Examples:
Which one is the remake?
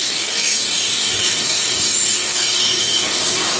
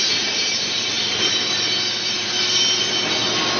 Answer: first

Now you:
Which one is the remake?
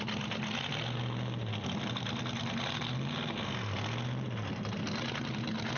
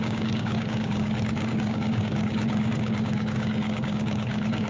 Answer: second